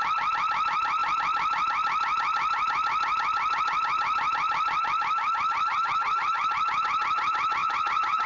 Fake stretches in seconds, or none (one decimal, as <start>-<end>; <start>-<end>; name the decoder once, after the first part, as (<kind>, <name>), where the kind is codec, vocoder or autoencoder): 7.6-8.3 (vocoder, Vocos)